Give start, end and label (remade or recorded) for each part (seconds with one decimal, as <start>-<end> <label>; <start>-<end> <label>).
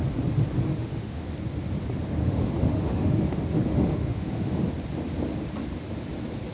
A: 0.0-0.7 recorded; 0.7-1.3 remade; 1.3-2.2 recorded; 2.2-3.2 remade; 3.2-3.7 recorded; 3.7-4.6 remade; 4.6-6.5 recorded